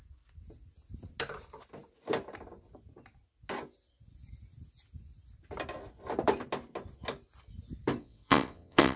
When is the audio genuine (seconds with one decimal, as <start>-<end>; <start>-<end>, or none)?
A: 0.0-8.0